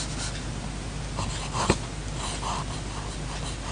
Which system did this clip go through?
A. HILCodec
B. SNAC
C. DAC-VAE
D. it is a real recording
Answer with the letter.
D